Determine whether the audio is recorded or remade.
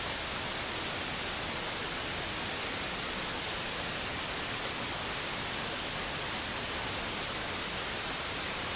recorded